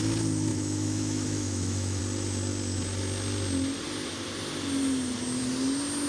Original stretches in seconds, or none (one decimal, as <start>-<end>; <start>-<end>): 0.0-0.5; 2.0-6.1